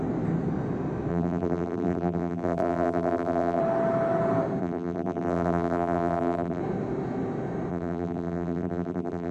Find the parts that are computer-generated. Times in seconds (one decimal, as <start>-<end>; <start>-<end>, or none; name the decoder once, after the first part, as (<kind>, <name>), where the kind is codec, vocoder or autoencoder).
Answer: 1.1-3.6 (vocoder, BigVGAN v2); 4.6-6.6; 7.7-9.3